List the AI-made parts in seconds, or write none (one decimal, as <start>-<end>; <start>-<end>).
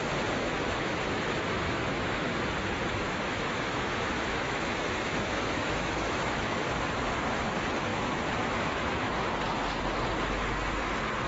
0.4-2.4; 2.9-6.6; 7.9-9.1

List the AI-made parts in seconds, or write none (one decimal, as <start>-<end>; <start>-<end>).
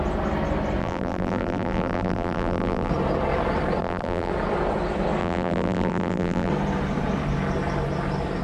0.8-2.9; 3.8-4.3; 5.2-6.5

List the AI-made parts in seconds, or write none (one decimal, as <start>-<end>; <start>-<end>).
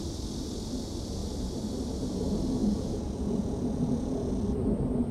2.6-4.3